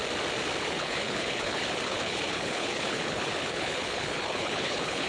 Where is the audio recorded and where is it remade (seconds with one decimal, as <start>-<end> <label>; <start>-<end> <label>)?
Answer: 0.0-0.6 recorded; 0.6-5.1 remade